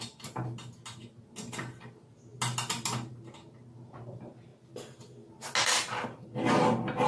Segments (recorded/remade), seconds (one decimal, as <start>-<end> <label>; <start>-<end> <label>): 0.0-7.1 recorded